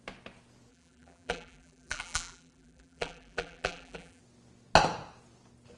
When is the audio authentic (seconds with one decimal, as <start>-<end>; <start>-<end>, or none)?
0.0-0.7; 4.2-5.8